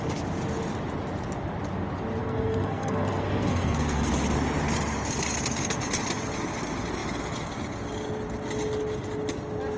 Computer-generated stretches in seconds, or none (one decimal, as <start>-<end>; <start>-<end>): 2.2-4.1